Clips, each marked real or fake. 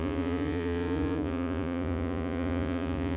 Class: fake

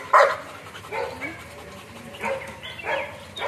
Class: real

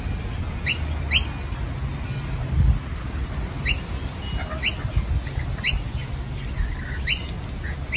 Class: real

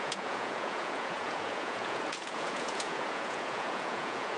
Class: fake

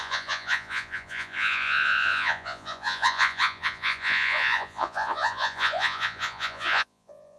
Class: fake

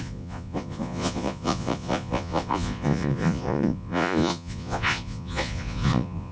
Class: fake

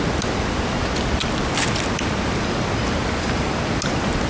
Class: real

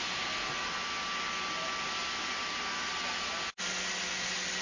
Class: real